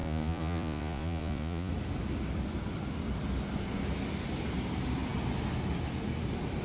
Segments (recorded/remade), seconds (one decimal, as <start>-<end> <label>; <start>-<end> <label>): 0.0-1.7 remade; 1.7-6.6 recorded